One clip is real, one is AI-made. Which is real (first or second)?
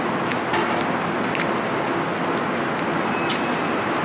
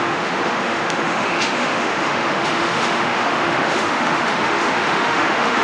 first